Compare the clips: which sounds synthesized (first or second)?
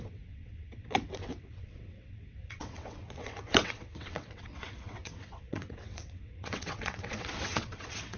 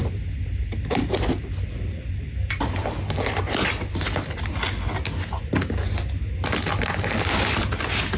first